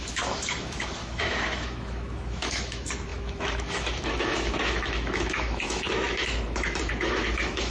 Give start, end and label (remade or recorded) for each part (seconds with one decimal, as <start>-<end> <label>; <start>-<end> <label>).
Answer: 0.0-7.7 remade